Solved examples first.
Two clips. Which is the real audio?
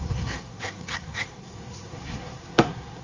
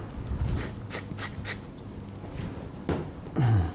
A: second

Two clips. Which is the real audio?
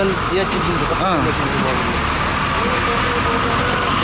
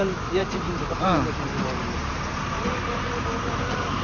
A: first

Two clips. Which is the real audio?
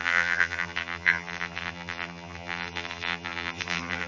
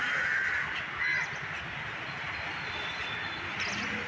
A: second